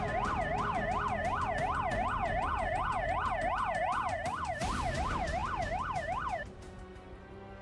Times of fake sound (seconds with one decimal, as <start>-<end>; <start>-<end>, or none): 2.2-3.3